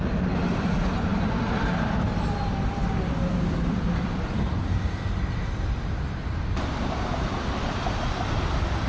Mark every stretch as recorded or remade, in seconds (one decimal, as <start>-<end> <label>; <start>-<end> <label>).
0.0-0.5 recorded; 0.5-8.9 remade